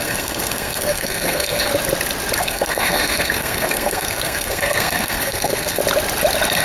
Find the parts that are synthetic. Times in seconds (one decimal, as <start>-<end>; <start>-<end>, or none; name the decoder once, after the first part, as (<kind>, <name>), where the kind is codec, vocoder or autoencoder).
0.0-1.7 (codec, SNAC); 2.4-5.8

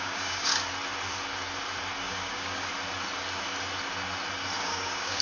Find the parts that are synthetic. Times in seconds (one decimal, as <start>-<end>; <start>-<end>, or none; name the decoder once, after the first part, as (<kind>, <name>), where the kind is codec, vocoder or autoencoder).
0.0-0.5 (codec, DAC); 2.0-2.7; 4.6-5.2

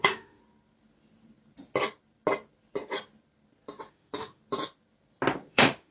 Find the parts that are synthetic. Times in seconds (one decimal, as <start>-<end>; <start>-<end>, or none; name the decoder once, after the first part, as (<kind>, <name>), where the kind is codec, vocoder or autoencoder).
0.0-0.4 (autoencoder, DAC-VAE); 3.9-4.4; 5.5-5.9